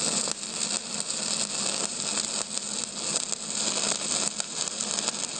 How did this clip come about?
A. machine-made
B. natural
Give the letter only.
B